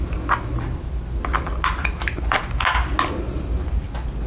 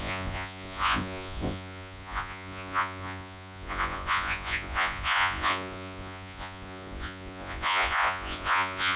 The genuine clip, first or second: first